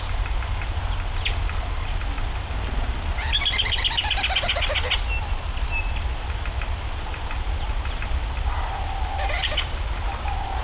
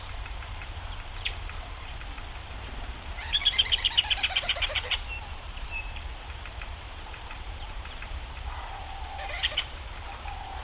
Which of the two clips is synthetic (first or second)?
second